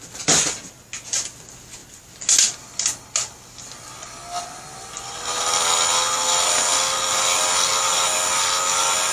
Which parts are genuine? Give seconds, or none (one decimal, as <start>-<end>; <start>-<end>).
0.0-9.1